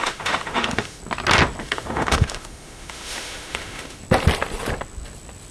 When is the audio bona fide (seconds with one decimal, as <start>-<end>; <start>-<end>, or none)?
1.0-1.6; 4.0-5.5